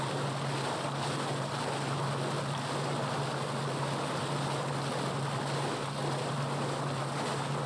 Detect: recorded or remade recorded